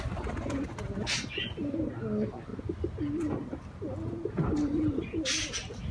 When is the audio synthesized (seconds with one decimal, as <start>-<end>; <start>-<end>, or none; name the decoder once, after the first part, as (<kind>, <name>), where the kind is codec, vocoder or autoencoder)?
none